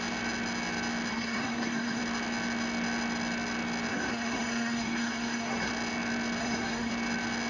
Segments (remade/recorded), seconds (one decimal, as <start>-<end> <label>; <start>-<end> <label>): 0.0-1.1 recorded; 1.1-2.0 remade; 2.0-3.9 recorded; 3.9-5.7 remade; 5.7-6.4 recorded; 6.4-6.9 remade; 6.9-7.5 recorded